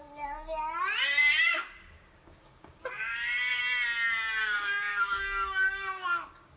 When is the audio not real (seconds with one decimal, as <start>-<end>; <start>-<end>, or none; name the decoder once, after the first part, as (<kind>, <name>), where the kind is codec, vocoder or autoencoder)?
1.5-3.6 (codec, DAC); 4.4-6.6